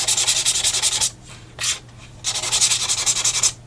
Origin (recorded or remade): recorded